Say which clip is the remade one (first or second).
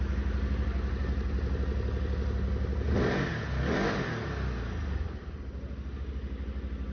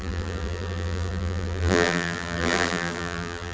second